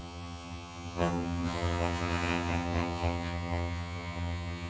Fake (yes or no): yes